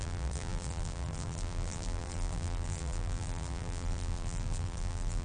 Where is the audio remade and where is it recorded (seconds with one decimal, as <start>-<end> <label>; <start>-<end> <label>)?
0.0-5.2 remade